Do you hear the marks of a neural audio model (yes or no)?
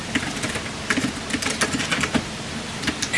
no